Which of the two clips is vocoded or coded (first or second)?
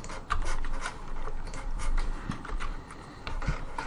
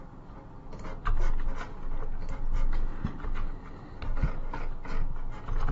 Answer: first